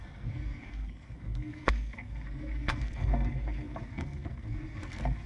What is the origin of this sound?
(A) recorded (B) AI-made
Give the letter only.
B